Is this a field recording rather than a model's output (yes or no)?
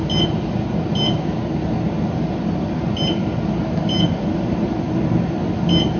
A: yes